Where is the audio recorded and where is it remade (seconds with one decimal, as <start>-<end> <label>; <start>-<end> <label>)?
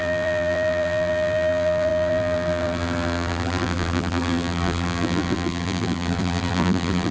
0.0-7.1 remade